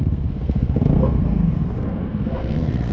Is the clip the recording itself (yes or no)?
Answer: no